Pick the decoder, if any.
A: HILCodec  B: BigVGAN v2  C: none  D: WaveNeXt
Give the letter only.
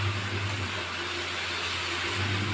C